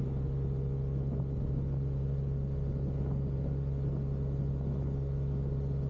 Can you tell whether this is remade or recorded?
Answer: recorded